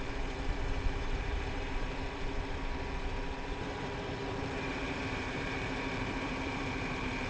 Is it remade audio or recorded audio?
remade